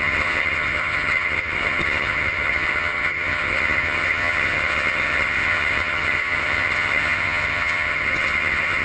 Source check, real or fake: fake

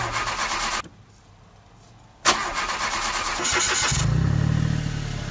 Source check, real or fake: real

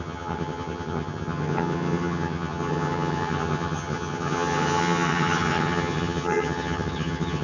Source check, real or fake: fake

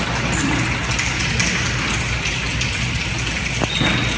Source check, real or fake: real